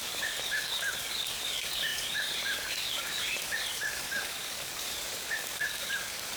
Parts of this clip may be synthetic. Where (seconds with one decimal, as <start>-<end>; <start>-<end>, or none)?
0.0-6.4